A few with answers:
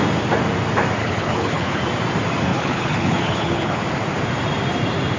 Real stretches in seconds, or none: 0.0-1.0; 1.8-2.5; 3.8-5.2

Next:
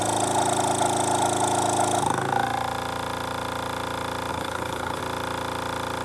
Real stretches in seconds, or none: 0.0-4.3; 5.0-6.0

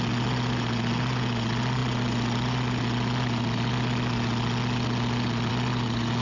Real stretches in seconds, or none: 0.0-6.2

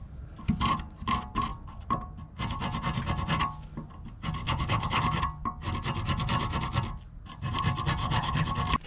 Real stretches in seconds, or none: 0.0-4.4; 5.0-8.0; 8.5-8.9

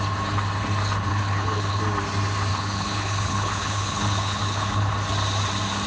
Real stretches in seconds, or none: 0.0-1.1; 1.8-2.5; 4.9-5.9

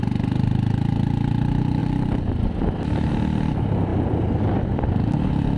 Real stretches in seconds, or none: 0.0-5.6

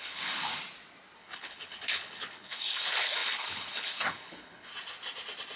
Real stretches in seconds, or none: 0.5-1.2; 4.7-5.6